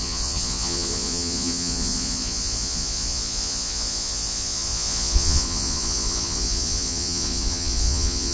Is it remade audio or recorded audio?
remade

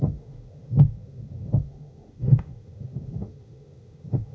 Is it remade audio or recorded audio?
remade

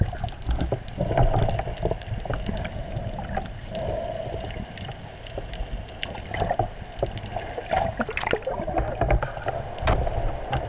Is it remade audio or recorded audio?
recorded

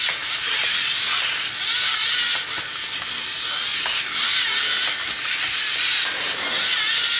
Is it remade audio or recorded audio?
recorded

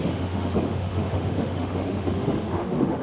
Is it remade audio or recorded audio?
remade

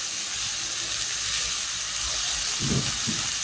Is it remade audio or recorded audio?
recorded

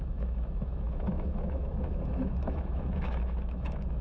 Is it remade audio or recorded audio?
remade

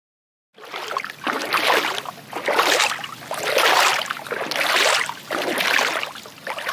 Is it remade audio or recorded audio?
recorded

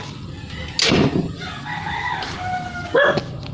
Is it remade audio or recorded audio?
recorded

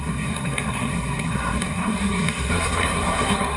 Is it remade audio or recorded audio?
remade